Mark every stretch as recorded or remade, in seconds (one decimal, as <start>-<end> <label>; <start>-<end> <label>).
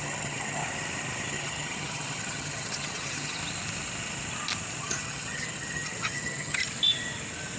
0.0-0.6 remade; 0.6-1.3 recorded; 1.3-3.4 remade; 3.4-4.8 recorded; 4.8-6.6 remade; 6.6-7.6 recorded